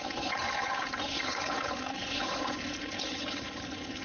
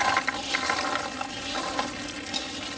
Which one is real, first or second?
second